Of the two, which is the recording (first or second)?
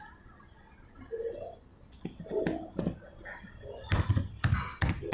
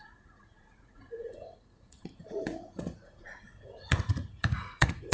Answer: first